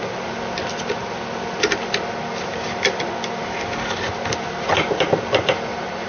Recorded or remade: recorded